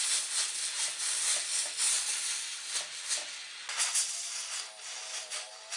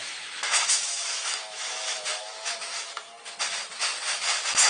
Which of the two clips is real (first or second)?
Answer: first